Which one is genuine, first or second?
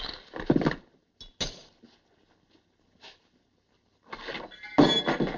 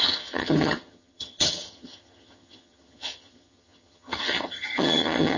first